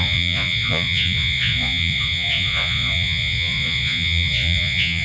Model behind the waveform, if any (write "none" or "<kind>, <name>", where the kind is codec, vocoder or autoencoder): vocoder, Vocos